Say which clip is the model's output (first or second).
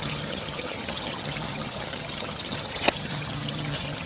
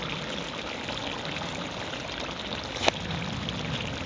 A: first